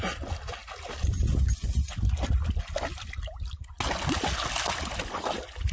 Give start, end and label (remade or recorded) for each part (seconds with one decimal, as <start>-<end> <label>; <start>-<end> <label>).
0.0-5.7 recorded